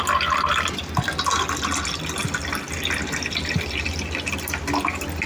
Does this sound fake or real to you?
real